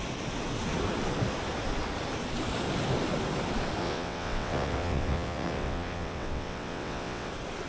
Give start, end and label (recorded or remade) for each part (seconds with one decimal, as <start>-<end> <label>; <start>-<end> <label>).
0.0-3.8 recorded; 3.8-7.3 remade; 7.3-7.7 recorded

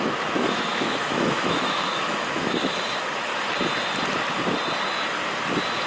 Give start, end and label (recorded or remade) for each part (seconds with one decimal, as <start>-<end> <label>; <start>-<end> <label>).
0.0-3.3 remade; 3.3-5.9 recorded

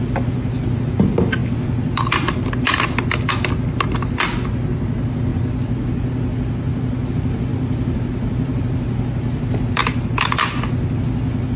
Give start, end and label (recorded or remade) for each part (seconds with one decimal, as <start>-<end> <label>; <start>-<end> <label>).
0.0-1.4 recorded; 1.4-2.4 remade; 2.4-7.5 recorded; 7.5-8.6 remade; 8.6-9.8 recorded; 9.8-10.3 remade; 10.3-11.6 recorded

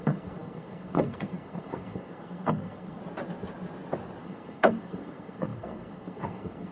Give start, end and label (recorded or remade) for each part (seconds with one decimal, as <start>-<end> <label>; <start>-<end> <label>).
0.0-3.0 remade; 3.0-4.2 recorded; 4.2-6.7 remade

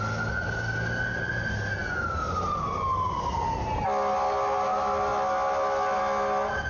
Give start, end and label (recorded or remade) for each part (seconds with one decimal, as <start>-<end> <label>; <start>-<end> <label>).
0.0-6.7 recorded

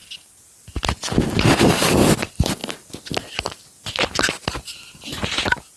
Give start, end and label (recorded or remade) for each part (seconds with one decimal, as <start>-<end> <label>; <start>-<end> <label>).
0.0-5.8 recorded

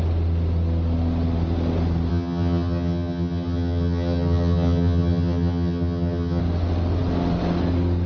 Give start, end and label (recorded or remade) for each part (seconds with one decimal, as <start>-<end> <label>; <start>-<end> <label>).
0.0-2.1 recorded; 2.1-6.4 remade; 6.4-8.1 recorded

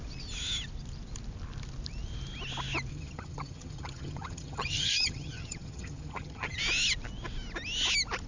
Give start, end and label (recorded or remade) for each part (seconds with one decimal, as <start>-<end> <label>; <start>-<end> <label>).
0.0-2.9 recorded; 2.9-6.6 remade; 6.6-8.3 recorded